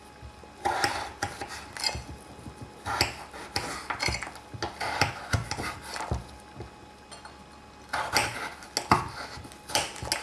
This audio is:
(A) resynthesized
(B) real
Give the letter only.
B